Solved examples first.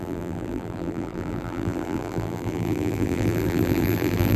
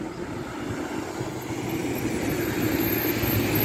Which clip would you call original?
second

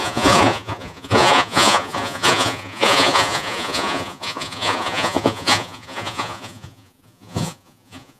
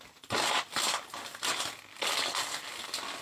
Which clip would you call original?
second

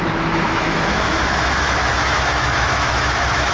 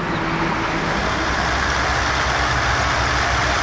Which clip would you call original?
second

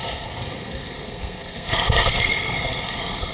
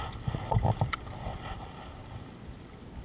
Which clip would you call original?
second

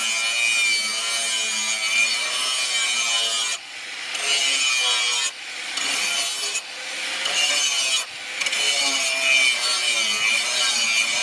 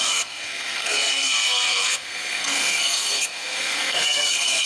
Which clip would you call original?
first